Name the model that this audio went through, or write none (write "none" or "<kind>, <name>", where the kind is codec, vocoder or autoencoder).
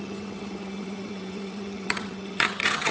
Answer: vocoder, HiFi-GAN